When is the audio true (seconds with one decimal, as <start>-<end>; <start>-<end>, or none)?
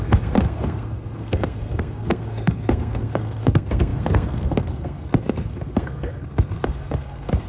none